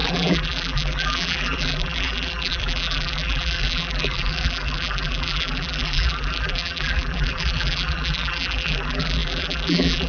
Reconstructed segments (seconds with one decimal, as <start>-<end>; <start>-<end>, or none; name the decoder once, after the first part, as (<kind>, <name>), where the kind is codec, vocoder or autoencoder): 0.0-10.1 (vocoder, BigVGAN v2)